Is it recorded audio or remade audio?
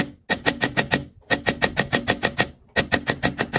recorded